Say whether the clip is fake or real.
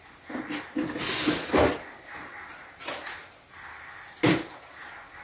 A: real